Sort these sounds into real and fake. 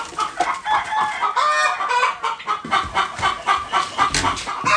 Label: real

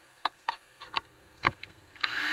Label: fake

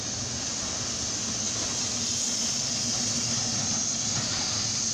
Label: real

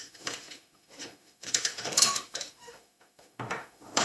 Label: fake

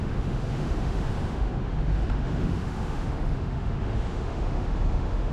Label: fake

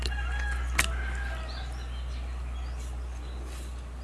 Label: real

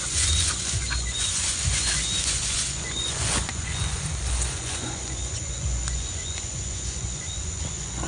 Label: fake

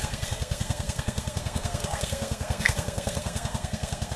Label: fake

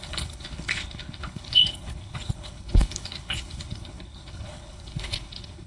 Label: fake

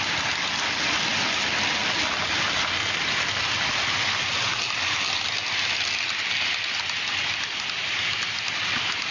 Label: real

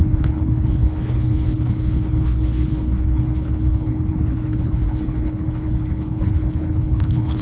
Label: fake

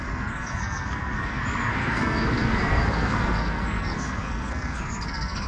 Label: fake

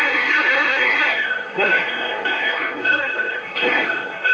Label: fake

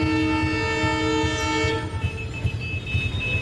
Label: real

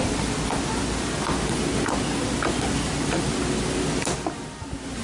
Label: real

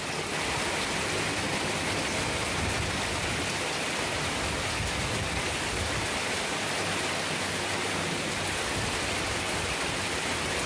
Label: real